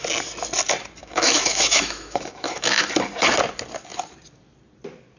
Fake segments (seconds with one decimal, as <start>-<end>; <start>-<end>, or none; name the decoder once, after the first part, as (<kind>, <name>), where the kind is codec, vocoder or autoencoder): 1.0-2.9 (autoencoder, DAC-VAE)